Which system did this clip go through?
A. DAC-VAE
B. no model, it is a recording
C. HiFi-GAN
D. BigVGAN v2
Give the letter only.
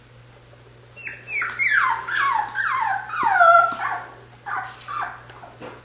B